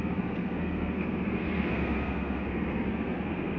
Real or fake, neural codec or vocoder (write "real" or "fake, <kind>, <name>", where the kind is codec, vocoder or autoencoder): fake, codec, SNAC